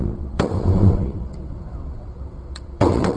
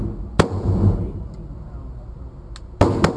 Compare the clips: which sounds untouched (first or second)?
second